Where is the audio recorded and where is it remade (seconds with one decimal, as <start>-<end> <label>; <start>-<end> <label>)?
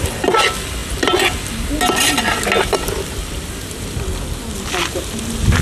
0.0-5.6 recorded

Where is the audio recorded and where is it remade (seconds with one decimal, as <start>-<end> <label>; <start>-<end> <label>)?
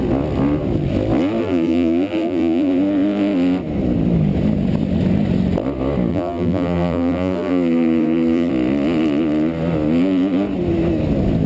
0.0-1.4 recorded; 1.4-2.7 remade; 2.7-6.1 recorded; 6.1-8.5 remade; 8.5-11.5 recorded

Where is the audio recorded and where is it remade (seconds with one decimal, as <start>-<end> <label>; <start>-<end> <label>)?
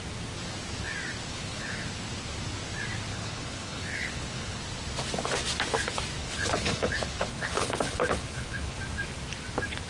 0.0-1.3 recorded; 1.3-1.9 remade; 1.9-3.1 recorded; 3.1-4.6 remade; 4.6-6.2 recorded; 6.2-8.8 remade; 8.8-9.9 recorded